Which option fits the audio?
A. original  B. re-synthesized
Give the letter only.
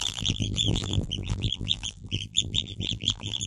B